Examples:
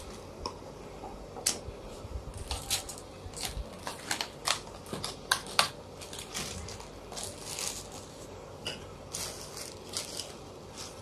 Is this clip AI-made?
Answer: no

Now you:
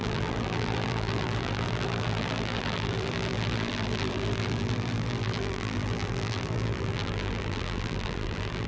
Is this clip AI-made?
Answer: yes